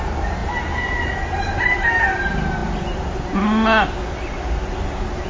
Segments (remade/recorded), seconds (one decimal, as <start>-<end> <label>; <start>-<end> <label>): 0.0-5.3 recorded